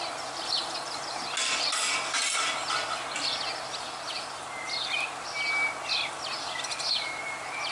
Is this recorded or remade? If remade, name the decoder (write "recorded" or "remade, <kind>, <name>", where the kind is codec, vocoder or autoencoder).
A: recorded